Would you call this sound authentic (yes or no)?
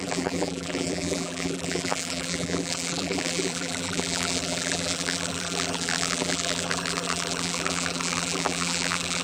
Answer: no